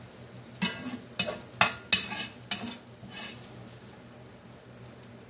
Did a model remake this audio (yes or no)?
no